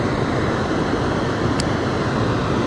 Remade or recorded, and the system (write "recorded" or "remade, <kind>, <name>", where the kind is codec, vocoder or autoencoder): recorded